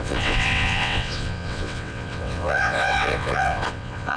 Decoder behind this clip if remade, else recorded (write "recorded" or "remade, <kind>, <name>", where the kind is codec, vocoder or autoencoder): remade, vocoder, WaveNeXt